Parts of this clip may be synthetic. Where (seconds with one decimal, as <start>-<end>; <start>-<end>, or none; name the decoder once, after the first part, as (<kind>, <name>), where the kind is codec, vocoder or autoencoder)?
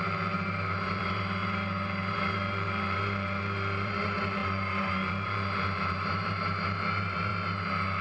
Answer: 0.0-7.3 (vocoder, BigVGAN v2)